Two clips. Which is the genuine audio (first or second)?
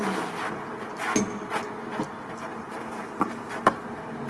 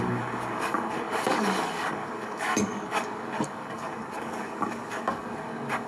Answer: first